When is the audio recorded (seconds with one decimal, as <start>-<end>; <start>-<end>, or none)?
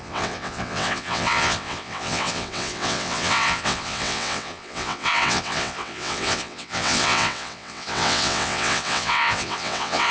none